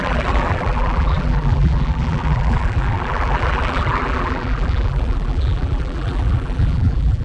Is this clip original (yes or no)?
no